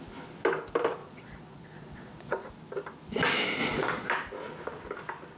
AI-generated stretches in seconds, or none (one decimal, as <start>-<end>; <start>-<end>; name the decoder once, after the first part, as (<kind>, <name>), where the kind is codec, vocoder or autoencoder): 1.0-2.5 (vocoder, Vocos); 3.6-4.1